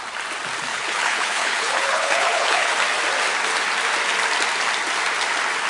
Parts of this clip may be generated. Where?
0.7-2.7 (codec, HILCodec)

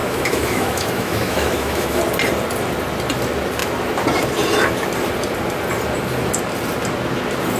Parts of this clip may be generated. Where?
0.0-2.0 (autoencoder, DAC-VAE)

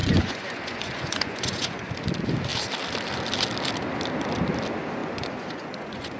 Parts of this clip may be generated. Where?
0.0-1.9 (vocoder, Vocos); 5.0-6.2